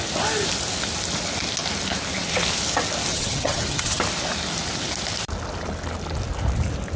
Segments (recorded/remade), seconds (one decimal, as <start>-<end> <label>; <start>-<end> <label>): 0.0-3.1 recorded; 3.1-4.0 remade; 4.0-7.0 recorded